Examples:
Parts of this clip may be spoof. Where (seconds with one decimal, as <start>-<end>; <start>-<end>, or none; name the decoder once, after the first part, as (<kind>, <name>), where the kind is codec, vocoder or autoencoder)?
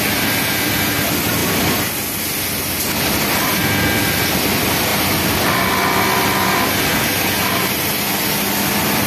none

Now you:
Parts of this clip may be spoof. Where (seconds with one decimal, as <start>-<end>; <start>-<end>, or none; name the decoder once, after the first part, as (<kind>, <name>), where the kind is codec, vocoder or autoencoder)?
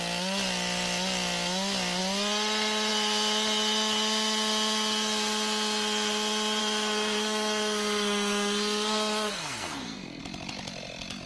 6.6-10.2 (codec, SNAC)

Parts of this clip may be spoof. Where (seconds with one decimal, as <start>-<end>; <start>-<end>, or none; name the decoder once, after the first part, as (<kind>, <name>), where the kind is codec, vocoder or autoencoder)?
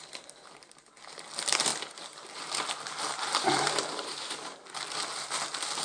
1.7-2.3 (vocoder, BigVGAN v2); 3.4-4.1